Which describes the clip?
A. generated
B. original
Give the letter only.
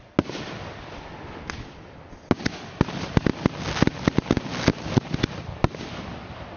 B